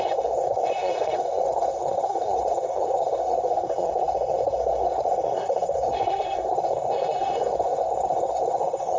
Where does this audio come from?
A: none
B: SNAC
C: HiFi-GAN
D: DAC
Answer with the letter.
B